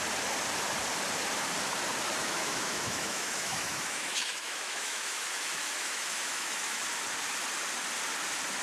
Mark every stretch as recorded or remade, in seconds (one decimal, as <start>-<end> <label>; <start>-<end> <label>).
0.0-2.2 recorded; 2.2-6.8 remade; 6.8-8.6 recorded